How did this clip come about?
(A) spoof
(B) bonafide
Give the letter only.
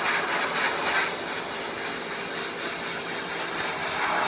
B